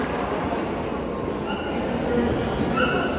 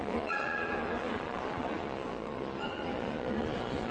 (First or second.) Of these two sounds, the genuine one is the first